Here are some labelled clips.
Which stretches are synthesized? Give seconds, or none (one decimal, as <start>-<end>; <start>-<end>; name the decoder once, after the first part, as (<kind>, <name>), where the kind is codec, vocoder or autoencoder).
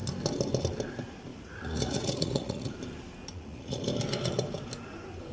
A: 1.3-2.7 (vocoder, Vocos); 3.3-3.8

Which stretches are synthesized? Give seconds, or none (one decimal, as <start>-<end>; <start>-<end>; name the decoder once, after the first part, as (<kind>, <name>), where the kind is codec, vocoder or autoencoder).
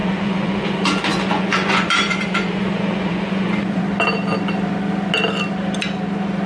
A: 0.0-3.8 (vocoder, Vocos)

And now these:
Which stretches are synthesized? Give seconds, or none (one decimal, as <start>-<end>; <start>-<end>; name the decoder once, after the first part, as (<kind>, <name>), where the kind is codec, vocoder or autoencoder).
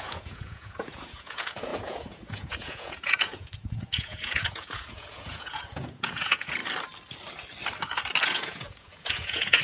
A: 0.0-6.6 (vocoder, Vocos); 8.2-9.6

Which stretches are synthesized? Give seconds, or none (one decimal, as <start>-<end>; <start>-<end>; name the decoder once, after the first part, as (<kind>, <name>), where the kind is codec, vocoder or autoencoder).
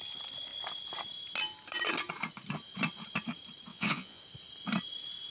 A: 3.7-4.2 (vocoder, Vocos)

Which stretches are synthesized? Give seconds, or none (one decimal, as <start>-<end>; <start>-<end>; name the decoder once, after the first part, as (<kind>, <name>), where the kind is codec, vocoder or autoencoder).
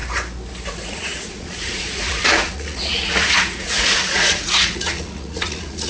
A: 0.7-5.9 (vocoder, Vocos)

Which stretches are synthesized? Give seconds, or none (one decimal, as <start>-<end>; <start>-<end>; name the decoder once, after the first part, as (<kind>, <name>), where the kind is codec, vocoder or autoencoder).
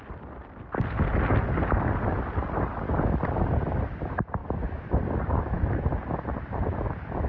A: none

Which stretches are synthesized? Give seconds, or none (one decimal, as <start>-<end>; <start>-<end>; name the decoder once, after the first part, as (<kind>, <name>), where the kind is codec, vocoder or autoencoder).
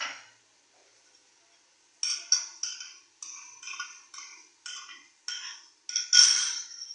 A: none